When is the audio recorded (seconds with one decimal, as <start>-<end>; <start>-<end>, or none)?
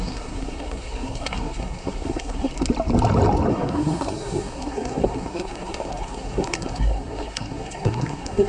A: 2.5-3.5